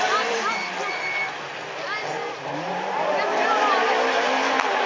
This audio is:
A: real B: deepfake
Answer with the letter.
A